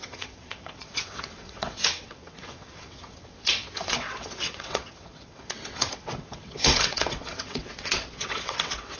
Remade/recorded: remade